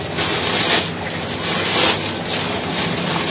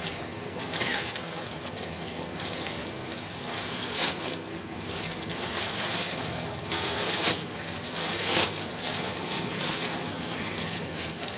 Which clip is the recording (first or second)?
first